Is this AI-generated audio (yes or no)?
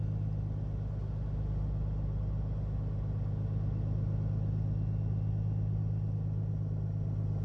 no